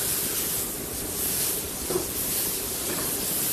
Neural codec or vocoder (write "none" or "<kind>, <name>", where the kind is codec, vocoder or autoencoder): vocoder, BigVGAN v2